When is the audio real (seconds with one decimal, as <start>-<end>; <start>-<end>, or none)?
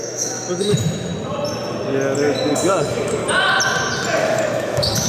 1.1-2.5; 3.2-4.2